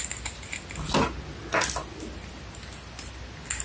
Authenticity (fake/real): real